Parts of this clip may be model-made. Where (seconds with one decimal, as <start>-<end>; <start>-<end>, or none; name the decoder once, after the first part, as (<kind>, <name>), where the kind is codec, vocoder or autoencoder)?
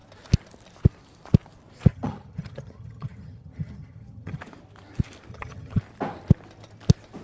1.9-4.4 (vocoder, HiFi-GAN); 5.3-5.8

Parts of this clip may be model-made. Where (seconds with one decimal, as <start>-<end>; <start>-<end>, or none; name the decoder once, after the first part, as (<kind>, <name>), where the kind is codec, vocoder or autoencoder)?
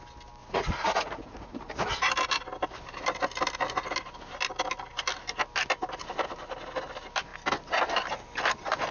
0.4-1.6 (vocoder, Vocos)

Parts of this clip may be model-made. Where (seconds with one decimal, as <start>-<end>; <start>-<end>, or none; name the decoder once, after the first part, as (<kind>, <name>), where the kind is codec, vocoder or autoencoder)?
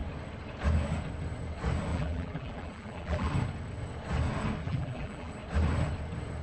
1.9-3.3 (vocoder, BigVGAN v2); 4.6-5.3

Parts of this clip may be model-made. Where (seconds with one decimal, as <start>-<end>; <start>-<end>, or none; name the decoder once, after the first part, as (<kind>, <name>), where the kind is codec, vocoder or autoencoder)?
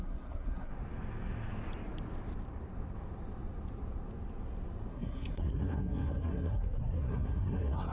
0.0-0.7 (codec, SNAC); 4.9-7.9